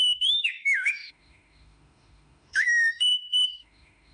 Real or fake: fake